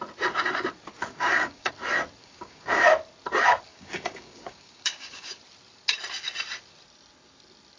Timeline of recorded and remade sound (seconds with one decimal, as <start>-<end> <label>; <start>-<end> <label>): 0.0-1.1 recorded; 1.1-1.7 remade; 1.7-2.2 recorded; 2.2-2.8 remade; 2.8-3.7 recorded; 3.7-5.4 remade; 5.4-7.8 recorded